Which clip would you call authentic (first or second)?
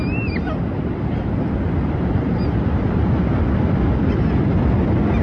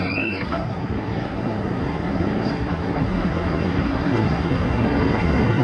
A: first